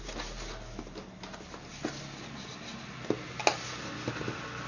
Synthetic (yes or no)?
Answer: no